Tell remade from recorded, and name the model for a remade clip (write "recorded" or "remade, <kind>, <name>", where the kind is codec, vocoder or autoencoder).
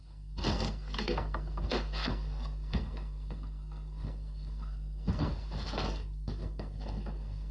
remade, codec, SNAC